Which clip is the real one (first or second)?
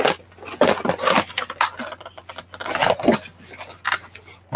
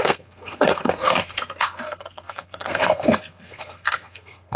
first